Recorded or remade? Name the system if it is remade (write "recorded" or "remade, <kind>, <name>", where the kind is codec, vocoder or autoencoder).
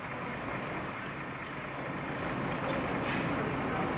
recorded